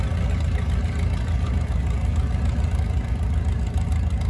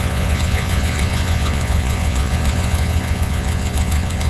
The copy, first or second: second